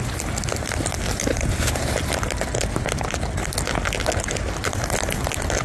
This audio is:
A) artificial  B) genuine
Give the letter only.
B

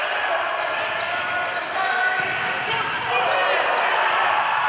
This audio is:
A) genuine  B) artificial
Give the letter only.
A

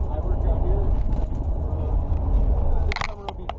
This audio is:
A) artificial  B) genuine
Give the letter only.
B